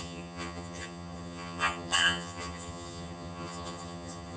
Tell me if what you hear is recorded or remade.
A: remade